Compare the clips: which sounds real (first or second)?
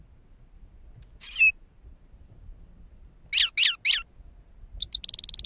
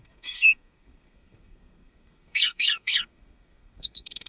first